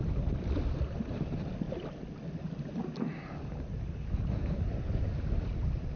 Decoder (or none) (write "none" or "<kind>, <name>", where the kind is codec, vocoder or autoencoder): none